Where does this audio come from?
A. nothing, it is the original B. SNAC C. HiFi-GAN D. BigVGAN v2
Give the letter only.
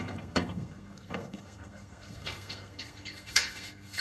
B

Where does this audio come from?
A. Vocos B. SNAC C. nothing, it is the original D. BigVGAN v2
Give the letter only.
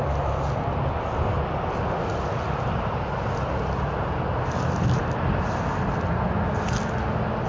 C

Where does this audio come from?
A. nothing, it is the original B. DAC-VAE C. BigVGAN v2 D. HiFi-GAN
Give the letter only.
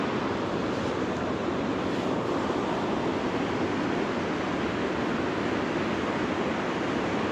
A